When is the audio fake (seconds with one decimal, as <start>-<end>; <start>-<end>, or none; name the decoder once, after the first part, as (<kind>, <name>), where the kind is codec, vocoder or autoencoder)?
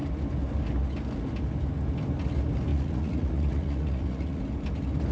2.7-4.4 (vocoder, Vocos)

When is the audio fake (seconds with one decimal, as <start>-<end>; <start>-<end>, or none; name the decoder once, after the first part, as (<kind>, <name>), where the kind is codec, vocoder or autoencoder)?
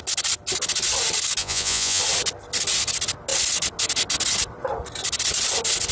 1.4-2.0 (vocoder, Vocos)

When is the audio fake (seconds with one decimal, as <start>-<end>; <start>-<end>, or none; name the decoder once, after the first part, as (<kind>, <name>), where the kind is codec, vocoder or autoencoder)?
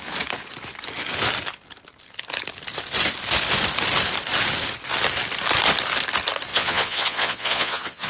6.5-8.1 (vocoder, Vocos)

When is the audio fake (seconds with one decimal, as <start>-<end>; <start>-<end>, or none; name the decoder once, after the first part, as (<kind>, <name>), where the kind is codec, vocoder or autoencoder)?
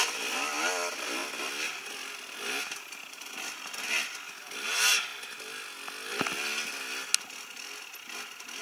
none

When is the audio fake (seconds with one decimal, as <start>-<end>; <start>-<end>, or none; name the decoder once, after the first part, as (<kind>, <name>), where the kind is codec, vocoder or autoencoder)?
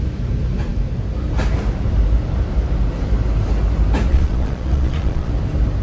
4.1-5.3 (vocoder, Vocos)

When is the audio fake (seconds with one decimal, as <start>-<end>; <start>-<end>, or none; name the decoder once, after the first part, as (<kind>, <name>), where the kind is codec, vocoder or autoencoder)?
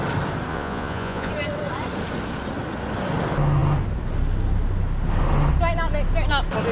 0.5-1.3 (vocoder, Vocos)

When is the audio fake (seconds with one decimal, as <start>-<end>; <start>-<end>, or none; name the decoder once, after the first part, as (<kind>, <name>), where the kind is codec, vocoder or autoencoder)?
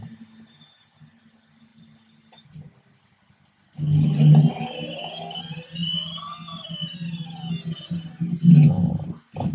none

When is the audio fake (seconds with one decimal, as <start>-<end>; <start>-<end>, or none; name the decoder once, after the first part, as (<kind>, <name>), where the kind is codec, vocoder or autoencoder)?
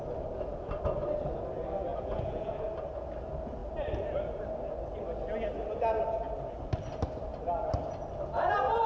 1.9-2.6 (vocoder, Vocos)